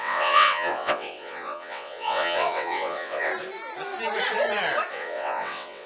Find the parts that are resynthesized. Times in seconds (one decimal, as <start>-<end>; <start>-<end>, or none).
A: 0.0-3.3; 4.9-5.9